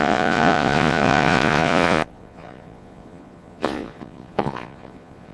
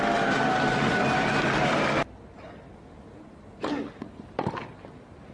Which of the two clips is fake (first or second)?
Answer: first